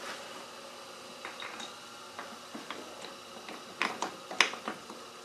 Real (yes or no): yes